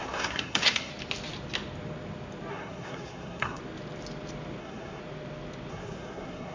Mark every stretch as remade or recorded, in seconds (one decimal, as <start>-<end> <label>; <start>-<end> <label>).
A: 0.0-0.9 remade; 0.9-2.5 recorded; 2.5-3.6 remade; 3.6-4.6 recorded; 4.6-5.0 remade; 5.0-5.7 recorded; 5.7-6.5 remade

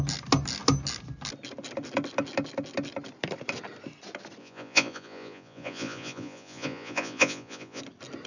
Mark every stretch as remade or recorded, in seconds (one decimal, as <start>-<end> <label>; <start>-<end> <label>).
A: 0.0-4.4 recorded; 4.4-7.8 remade; 7.8-8.3 recorded